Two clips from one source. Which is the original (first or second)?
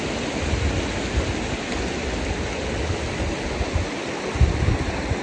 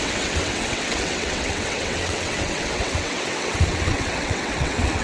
first